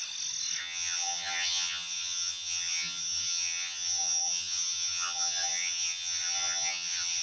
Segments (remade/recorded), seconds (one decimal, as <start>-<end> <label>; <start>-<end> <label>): 0.0-0.6 recorded; 0.6-7.2 remade